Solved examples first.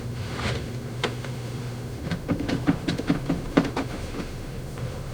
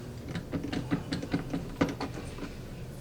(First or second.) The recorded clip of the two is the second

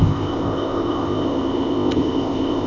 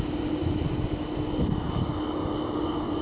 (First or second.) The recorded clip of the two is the second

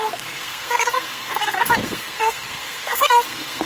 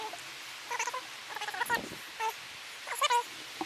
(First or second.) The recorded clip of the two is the second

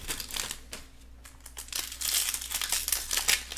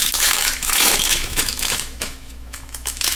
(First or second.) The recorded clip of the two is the first